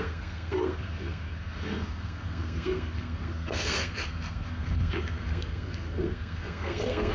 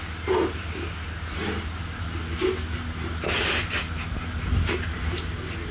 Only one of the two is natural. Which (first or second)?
second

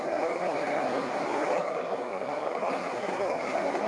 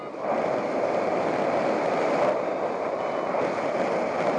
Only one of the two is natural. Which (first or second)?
second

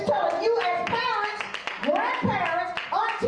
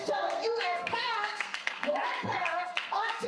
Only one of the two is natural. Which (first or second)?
first